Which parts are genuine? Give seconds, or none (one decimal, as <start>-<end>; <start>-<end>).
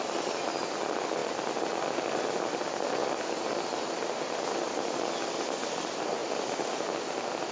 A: 0.0-7.5